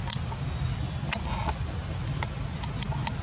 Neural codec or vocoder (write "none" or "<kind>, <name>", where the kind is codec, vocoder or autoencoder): none